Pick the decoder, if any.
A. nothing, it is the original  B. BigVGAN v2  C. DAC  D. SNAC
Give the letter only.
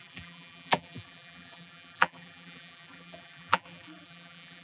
B